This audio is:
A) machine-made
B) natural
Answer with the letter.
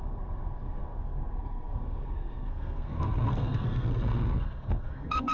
A